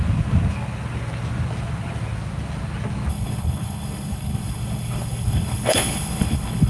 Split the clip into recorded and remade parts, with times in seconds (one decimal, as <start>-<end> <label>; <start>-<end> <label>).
0.0-3.1 recorded; 3.1-6.7 remade